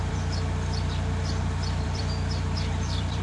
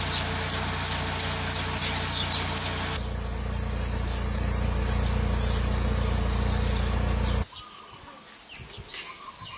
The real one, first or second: second